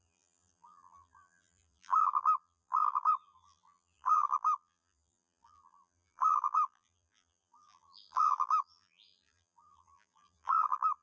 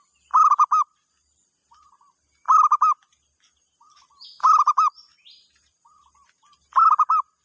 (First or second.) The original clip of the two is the second